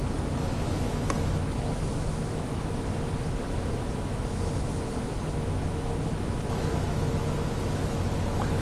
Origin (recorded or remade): remade